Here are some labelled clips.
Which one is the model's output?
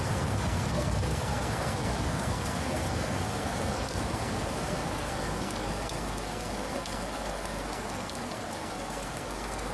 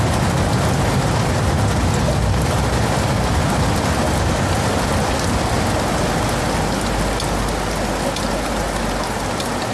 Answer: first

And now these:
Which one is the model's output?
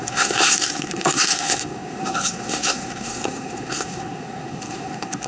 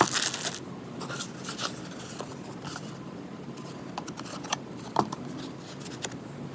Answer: first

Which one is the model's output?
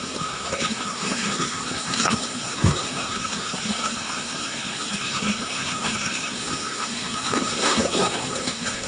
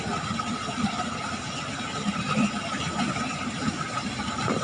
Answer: first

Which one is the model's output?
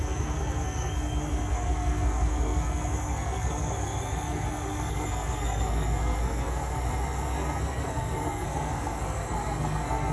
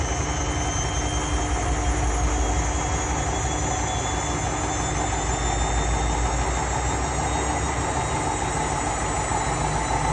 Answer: first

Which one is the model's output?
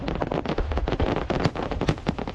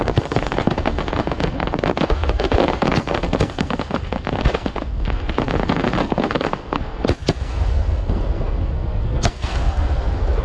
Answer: second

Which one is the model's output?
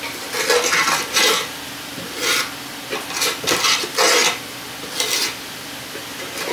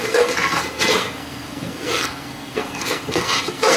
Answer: second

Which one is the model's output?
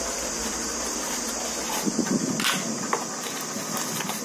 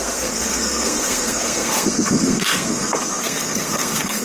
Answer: second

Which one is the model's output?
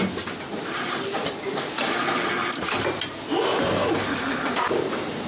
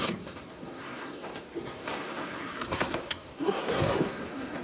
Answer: second